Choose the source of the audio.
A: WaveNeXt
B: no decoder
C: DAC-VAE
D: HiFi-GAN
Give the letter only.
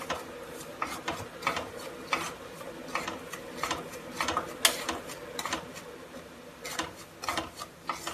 B